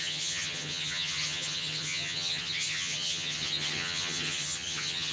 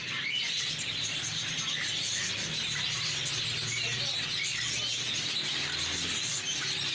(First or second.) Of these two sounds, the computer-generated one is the first